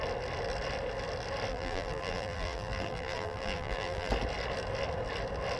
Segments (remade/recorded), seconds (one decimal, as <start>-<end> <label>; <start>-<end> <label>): 0.0-1.5 recorded; 1.5-4.1 remade; 4.1-5.6 recorded